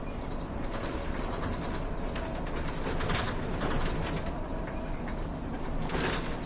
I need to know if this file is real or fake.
real